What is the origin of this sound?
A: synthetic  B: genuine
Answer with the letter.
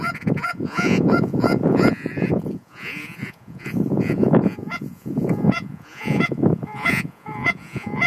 A